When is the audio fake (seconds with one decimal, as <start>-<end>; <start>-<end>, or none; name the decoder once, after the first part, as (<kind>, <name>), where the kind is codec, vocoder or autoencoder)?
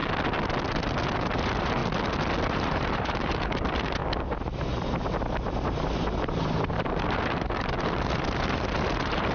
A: 1.1-1.8 (vocoder, BigVGAN v2); 2.4-4.0; 4.7-9.3